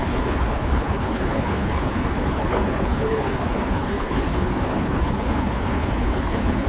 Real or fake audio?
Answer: fake